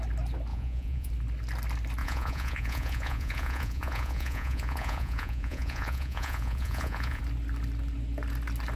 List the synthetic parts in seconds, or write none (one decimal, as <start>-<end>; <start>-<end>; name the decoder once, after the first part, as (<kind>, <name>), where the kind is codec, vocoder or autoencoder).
0.5-1.1 (vocoder, Vocos); 2.0-7.2